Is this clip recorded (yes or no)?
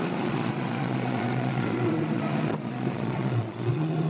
no